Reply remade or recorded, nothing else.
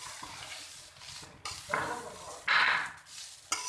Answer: recorded